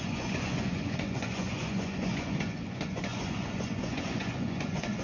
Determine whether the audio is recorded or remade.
remade